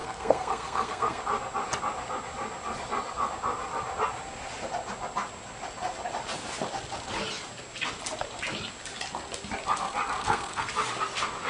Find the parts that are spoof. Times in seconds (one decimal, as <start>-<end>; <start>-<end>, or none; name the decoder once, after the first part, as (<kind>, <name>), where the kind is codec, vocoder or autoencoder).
0.0-1.2 (codec, SNAC); 10.2-10.7